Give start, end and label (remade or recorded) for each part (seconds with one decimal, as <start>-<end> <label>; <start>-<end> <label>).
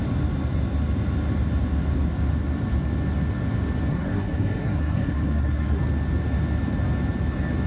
0.0-3.9 recorded; 3.9-5.8 remade; 5.8-7.7 recorded